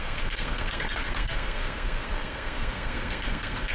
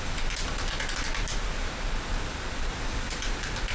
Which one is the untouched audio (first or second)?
second